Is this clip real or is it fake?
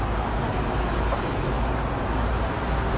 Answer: real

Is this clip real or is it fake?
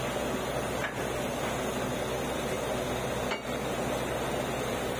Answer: real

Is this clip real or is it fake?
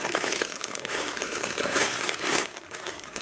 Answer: fake